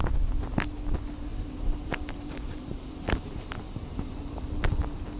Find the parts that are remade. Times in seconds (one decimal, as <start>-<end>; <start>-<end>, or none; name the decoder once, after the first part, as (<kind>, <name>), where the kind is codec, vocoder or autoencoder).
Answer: 1.3-4.4 (vocoder, BigVGAN v2)